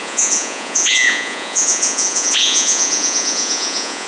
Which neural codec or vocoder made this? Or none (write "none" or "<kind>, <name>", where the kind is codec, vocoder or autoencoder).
vocoder, Vocos